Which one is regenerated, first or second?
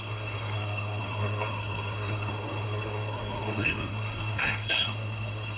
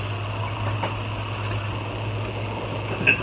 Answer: first